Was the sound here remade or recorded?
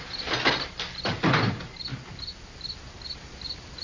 recorded